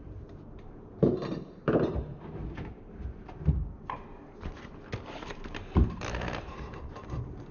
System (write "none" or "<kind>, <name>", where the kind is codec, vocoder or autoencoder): vocoder, BigVGAN v2